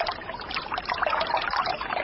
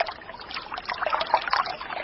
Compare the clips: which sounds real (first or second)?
second